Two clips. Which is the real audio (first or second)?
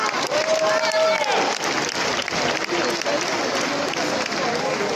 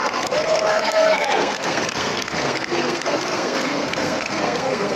first